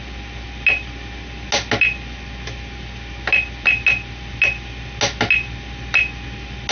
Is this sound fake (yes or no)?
no